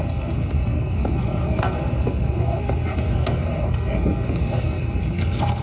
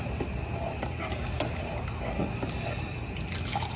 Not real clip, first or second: first